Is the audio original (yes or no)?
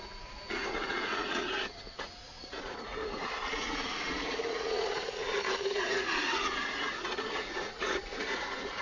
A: no